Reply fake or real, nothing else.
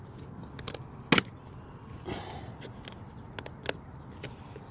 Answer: real